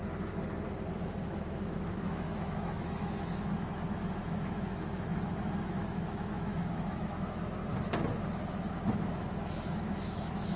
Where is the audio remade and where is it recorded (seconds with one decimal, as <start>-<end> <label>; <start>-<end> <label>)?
0.0-1.3 recorded; 1.3-7.6 remade; 7.6-8.2 recorded; 8.2-10.6 remade